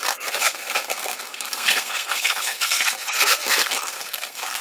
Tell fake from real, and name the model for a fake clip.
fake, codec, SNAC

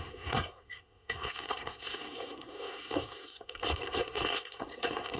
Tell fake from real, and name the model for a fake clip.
fake, codec, SNAC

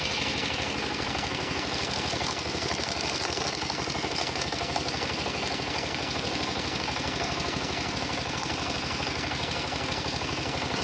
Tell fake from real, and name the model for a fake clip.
fake, codec, SNAC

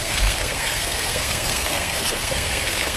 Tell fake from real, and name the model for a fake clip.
fake, codec, SNAC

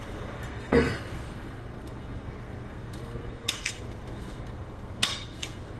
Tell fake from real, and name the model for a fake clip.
fake, codec, SNAC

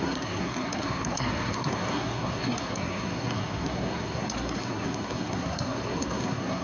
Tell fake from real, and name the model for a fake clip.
fake, codec, SNAC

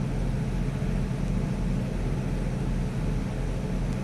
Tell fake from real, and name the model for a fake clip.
real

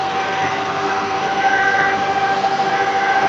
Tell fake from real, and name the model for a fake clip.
fake, codec, SNAC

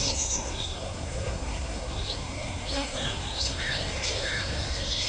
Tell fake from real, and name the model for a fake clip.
fake, codec, SNAC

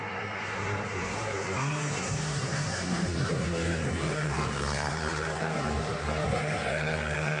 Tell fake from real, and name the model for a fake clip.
fake, codec, SNAC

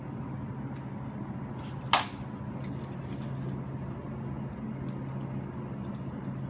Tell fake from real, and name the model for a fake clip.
real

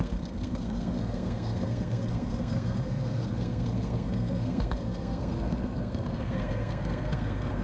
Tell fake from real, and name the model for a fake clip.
fake, codec, SNAC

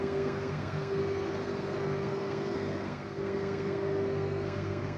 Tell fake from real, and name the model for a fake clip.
fake, codec, SNAC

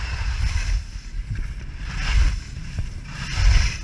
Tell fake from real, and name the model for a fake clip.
real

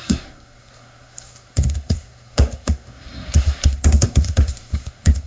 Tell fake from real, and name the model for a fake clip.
fake, codec, SNAC